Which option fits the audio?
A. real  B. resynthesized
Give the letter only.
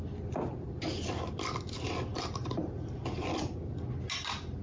A